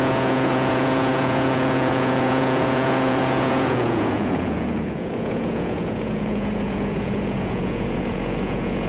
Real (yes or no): no